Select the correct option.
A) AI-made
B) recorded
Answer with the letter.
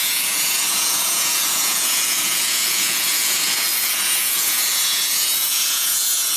A